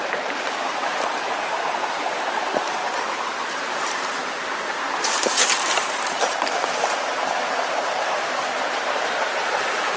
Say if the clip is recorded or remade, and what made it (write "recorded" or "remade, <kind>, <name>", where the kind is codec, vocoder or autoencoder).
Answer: remade, vocoder, BigVGAN v2